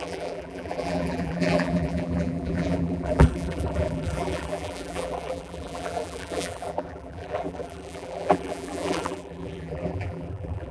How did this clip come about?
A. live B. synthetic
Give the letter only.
B